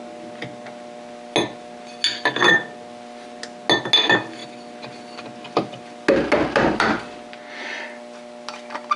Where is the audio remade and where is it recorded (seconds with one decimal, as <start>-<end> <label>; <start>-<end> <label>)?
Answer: 0.0-9.0 recorded